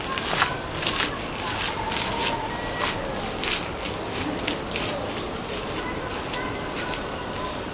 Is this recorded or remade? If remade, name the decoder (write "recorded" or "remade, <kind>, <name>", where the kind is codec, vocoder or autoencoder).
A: recorded